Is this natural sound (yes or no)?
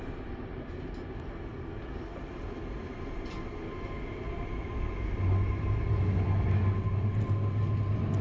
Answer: yes